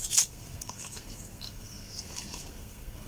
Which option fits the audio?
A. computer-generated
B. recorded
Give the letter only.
A